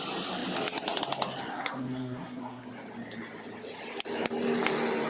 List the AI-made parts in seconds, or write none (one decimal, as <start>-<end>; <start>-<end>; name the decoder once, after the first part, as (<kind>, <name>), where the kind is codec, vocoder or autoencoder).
1.5-2.7 (codec, SNAC)